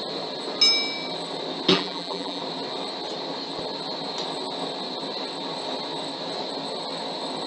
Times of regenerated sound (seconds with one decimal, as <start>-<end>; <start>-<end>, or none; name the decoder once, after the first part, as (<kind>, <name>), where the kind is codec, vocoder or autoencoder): 1.7-2.4 (vocoder, BigVGAN v2)